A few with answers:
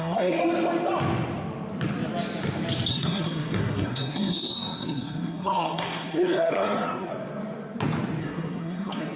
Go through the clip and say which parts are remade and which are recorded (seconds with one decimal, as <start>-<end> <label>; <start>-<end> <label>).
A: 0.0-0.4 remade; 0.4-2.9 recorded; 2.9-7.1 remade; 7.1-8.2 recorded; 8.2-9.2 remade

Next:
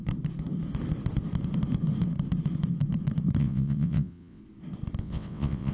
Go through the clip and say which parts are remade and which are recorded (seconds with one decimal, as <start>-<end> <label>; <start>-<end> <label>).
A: 0.0-3.4 recorded; 3.4-4.4 remade; 4.4-5.0 recorded; 5.0-5.7 remade

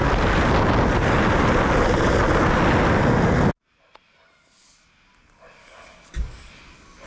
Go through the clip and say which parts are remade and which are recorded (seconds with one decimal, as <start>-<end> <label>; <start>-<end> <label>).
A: 0.0-5.6 recorded; 5.6-6.5 remade; 6.5-7.1 recorded

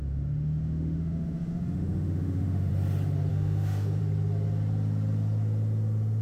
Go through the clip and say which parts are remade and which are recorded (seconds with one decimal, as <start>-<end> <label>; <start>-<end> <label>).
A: 0.0-2.7 remade; 2.7-3.3 recorded; 3.3-4.0 remade; 4.0-6.2 recorded

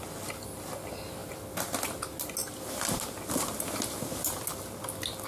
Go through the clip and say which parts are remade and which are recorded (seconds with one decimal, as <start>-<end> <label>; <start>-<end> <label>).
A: 0.0-5.3 recorded